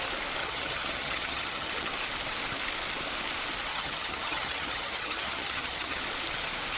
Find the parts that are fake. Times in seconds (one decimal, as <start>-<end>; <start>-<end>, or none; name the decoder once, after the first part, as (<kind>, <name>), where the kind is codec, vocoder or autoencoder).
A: 0.4-1.9 (vocoder, HiFi-GAN); 3.7-6.0